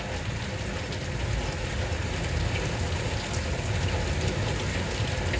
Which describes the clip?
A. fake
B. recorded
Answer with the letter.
B